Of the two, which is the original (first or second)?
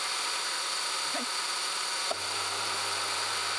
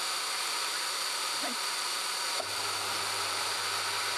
first